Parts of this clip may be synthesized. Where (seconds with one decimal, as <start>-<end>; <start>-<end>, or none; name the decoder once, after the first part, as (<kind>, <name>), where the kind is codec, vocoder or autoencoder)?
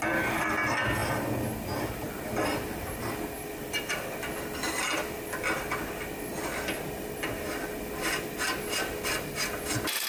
none